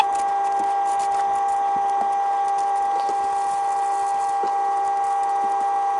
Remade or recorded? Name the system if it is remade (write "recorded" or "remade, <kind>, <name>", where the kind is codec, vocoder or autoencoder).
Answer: recorded